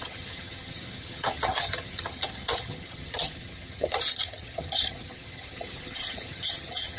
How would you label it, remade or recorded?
remade